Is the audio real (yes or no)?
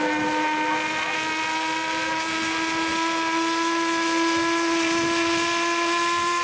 yes